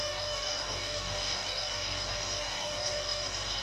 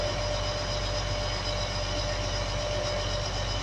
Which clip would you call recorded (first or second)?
second